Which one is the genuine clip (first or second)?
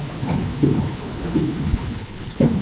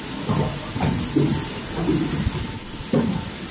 second